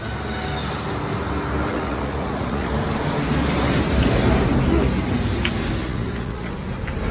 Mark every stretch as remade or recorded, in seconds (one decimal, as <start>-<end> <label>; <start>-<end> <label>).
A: 0.0-1.7 recorded; 1.7-2.7 remade; 2.7-5.8 recorded; 5.8-6.5 remade; 6.5-7.1 recorded